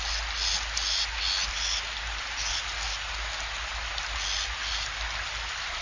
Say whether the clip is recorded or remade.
recorded